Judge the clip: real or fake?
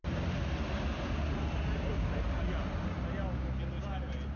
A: real